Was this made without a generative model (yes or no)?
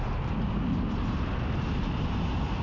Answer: yes